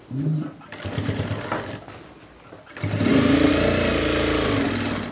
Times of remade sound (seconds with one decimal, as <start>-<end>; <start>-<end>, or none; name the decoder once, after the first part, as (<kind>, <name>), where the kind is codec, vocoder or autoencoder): none